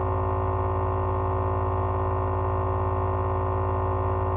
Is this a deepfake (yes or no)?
no